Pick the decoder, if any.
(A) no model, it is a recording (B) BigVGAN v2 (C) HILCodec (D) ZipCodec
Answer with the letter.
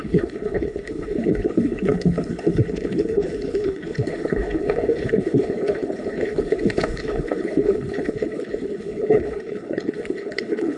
C